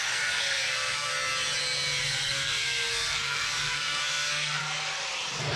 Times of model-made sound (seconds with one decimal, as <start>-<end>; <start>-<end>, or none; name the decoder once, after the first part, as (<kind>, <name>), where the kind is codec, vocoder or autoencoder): 0.0-1.1 (codec, SNAC); 2.0-4.6

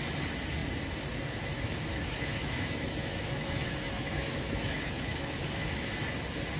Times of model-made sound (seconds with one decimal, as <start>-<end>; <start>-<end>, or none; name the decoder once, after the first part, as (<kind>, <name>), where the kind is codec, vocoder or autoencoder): 1.9-5.9 (autoencoder, DAC-VAE)

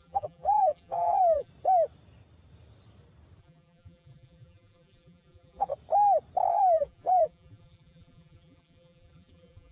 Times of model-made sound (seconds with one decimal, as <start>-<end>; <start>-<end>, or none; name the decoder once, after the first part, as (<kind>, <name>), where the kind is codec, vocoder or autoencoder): 0.0-1.5 (vocoder, BigVGAN v2); 3.4-5.7; 6.5-9.7

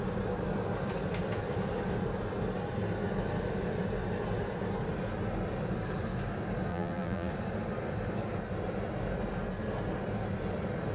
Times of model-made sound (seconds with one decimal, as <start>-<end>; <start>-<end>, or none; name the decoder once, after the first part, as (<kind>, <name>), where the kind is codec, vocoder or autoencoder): 6.7-7.3 (vocoder, BigVGAN v2)

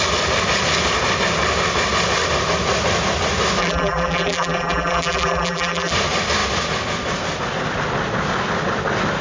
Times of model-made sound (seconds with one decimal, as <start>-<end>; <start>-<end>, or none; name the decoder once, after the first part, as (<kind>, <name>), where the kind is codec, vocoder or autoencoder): 3.6-5.9 (vocoder, BigVGAN v2)

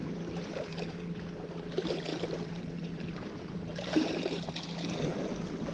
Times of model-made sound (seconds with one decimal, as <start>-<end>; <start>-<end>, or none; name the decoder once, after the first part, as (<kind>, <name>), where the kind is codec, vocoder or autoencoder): 0.0-1.1 (vocoder, BigVGAN v2); 2.1-4.5

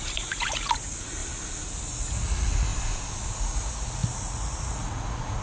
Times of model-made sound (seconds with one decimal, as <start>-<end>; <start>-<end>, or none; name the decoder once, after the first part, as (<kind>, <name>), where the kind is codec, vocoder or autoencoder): 0.0-1.2 (vocoder, Vocos); 1.9-2.7; 3.3-5.4

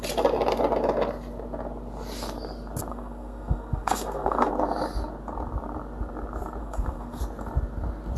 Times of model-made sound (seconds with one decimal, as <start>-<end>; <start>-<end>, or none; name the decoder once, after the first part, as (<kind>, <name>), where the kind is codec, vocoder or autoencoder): 2.9-4.5 (codec, SNAC); 6.6-7.2